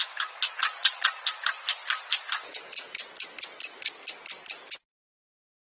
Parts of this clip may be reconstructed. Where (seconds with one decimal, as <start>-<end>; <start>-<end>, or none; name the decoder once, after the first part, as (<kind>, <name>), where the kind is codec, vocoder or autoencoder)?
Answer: 0.6-1.2 (vocoder, Vocos)